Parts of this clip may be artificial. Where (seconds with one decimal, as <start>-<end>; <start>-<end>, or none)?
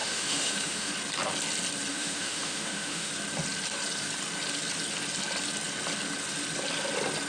0.0-0.9; 1.9-3.1